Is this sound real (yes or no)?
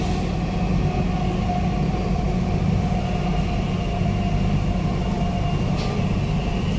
yes